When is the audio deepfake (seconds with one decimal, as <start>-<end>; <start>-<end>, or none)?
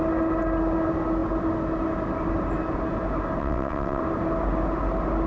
3.4-4.0